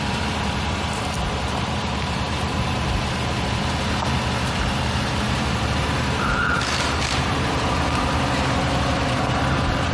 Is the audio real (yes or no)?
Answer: no